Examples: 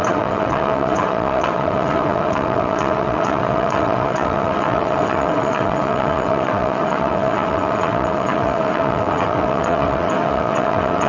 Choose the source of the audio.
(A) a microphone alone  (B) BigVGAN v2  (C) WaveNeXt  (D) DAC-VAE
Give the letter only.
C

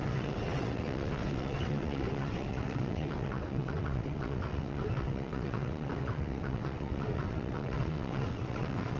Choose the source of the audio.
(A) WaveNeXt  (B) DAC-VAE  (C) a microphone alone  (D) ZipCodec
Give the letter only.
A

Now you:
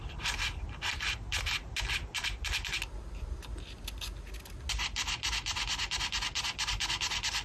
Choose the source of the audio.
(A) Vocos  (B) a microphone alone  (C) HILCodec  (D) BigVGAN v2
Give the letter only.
B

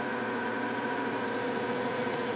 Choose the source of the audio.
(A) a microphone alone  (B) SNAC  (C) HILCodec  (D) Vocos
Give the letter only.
D